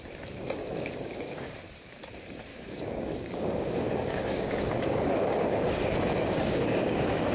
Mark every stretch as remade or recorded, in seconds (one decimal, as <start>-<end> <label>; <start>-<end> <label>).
0.0-0.6 recorded; 0.6-1.5 remade; 1.5-2.5 recorded; 2.5-7.3 remade